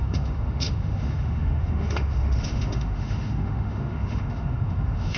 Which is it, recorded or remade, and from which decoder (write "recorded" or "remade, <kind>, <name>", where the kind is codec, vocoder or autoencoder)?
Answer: remade, autoencoder, DAC-VAE